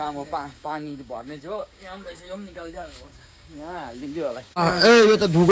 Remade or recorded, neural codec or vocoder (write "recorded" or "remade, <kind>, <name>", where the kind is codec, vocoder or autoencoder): remade, codec, DAC